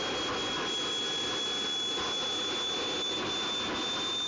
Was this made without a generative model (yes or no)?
yes